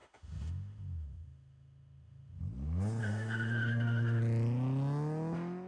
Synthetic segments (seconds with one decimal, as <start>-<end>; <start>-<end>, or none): 0.0-2.4; 3.0-4.2